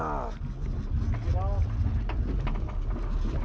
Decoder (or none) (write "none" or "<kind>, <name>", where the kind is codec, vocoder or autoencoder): none